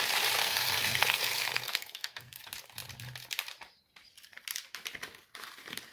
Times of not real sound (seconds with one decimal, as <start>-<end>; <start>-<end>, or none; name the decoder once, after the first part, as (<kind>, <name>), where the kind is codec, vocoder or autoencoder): 0.4-2.4 (codec, SNAC)